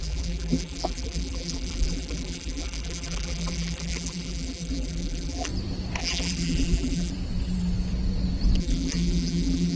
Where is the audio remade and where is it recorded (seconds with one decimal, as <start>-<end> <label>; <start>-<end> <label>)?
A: 0.0-5.5 remade; 5.5-6.0 recorded; 6.0-7.1 remade; 7.1-8.6 recorded; 8.6-9.8 remade